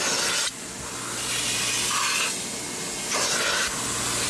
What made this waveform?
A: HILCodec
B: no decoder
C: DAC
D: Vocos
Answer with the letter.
B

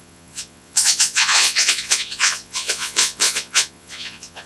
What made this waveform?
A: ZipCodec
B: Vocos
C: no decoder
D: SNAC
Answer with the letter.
B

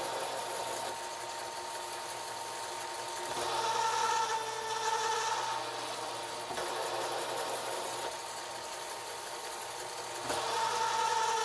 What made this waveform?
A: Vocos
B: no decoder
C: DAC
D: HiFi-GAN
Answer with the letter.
B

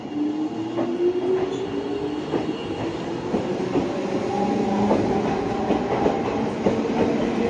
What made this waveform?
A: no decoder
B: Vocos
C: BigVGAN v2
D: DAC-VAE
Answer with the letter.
A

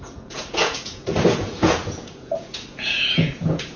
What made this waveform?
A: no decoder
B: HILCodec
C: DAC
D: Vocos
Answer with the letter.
D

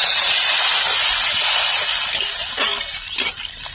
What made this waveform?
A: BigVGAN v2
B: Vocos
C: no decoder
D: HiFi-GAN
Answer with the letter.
C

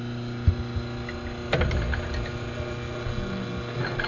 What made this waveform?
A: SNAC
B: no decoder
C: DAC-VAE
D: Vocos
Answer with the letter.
B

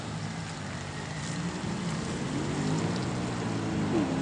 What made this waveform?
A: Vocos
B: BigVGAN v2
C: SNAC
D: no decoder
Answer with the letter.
D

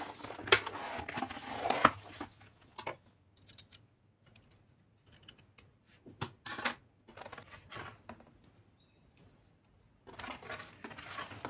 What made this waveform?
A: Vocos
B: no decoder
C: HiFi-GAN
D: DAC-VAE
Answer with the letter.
B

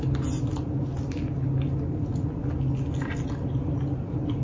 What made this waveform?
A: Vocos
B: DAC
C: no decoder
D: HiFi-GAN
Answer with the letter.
C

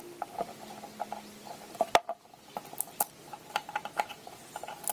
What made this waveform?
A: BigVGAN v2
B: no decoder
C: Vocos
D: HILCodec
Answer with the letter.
B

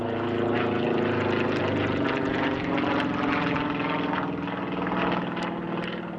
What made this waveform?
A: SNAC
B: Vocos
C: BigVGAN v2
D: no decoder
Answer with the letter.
D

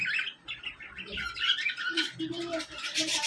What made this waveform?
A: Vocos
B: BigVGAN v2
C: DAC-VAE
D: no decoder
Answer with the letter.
D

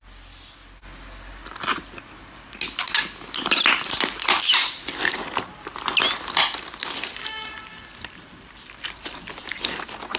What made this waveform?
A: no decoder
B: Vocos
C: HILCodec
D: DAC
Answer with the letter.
A